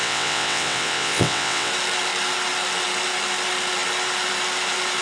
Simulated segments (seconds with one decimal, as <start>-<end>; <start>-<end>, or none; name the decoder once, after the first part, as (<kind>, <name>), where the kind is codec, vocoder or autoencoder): 0.0-1.7 (vocoder, WaveNeXt)